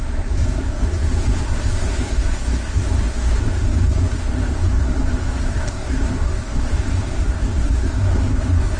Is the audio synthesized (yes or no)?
yes